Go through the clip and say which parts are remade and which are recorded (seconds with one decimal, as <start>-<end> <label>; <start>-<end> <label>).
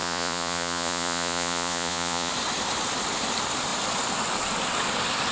0.0-2.3 remade; 2.3-5.3 recorded